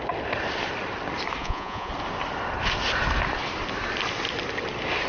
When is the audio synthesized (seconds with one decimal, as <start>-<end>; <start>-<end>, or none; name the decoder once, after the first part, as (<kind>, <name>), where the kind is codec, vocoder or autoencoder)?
1.4-1.9 (vocoder, Vocos)